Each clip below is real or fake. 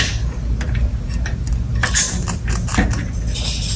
real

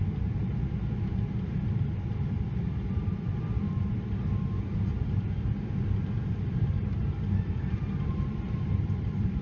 real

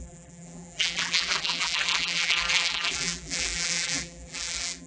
fake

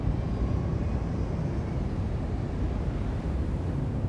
fake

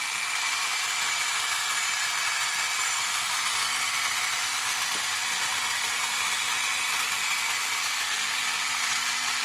fake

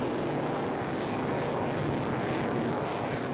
real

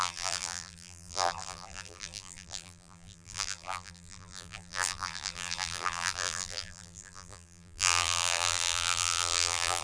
fake